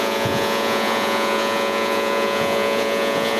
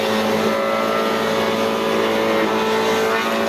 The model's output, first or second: first